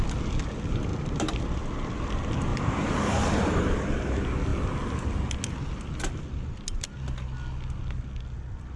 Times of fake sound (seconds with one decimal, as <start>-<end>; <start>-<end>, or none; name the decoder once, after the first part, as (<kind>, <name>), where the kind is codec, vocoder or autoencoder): 0.9-1.6 (vocoder, BigVGAN v2); 2.5-3.1